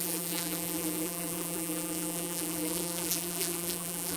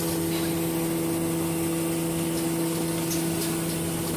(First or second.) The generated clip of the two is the first